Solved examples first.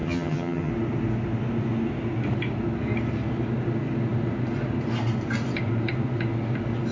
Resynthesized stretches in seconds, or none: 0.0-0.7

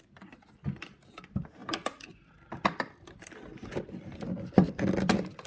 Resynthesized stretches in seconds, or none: none

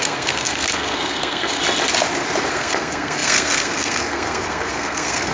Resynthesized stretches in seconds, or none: 0.0-1.6; 2.5-5.3

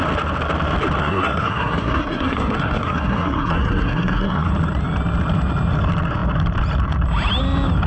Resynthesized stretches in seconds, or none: 1.0-4.5

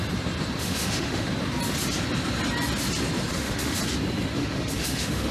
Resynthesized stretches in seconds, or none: 0.6-1.3; 3.3-3.8; 4.4-5.3

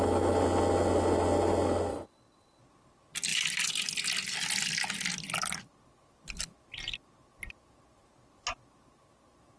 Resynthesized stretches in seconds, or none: 1.9-2.6

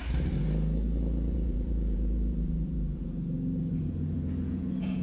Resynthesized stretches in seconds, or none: 1.3-5.0

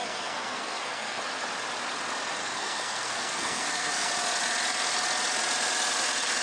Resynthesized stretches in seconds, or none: 0.0-1.2; 2.4-4.1